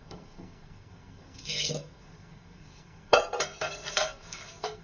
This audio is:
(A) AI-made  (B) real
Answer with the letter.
A